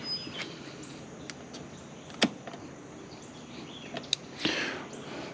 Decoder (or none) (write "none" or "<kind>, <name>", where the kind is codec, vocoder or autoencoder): none